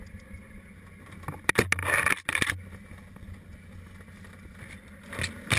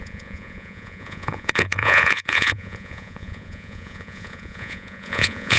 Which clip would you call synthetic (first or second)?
second